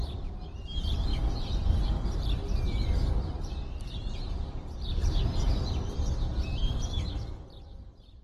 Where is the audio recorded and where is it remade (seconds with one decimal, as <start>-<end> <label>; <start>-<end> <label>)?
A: 0.0-1.1 remade; 1.1-3.1 recorded; 3.1-8.2 remade